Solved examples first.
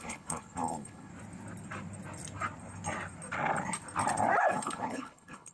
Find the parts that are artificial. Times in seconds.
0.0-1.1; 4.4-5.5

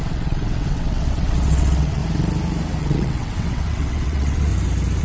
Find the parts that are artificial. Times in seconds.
0.0-2.0; 2.8-4.5